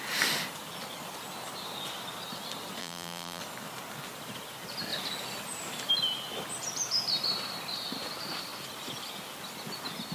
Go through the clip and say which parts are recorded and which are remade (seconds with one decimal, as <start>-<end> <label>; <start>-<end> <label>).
0.0-2.8 recorded; 2.8-3.4 remade; 3.4-10.1 recorded